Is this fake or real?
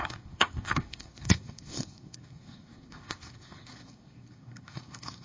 fake